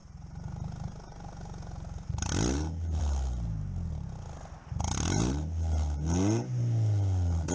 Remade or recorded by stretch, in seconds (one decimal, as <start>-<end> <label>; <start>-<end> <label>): 0.0-7.5 recorded